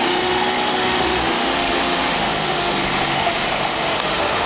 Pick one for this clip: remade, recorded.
remade